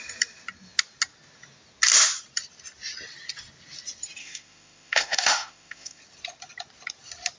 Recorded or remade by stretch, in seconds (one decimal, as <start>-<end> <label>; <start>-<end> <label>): 0.0-4.2 recorded; 4.2-6.0 remade; 6.0-7.4 recorded